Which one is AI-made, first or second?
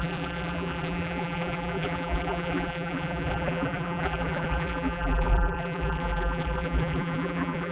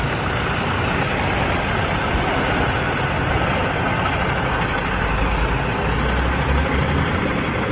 first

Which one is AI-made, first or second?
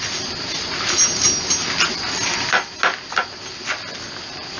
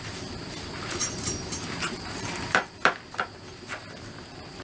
second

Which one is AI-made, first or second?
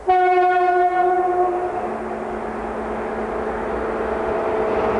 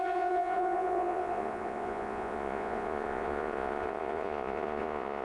second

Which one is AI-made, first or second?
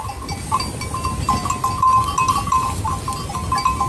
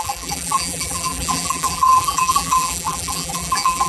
second